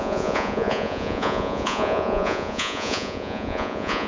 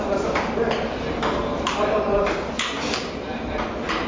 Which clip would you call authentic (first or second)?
second